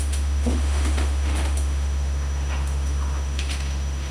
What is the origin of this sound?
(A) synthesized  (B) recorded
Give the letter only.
A